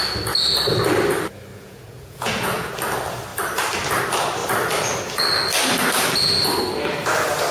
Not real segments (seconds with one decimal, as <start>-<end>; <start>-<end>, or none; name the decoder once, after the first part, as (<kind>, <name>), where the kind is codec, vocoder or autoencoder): 1.5-2.7 (vocoder, Vocos)